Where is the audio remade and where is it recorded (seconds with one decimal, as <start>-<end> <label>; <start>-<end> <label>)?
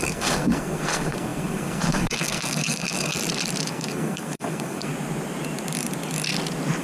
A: 0.0-3.2 remade; 3.2-3.7 recorded; 3.7-4.9 remade; 4.9-6.8 recorded